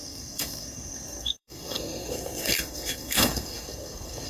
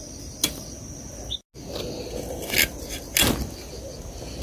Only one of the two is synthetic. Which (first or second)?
first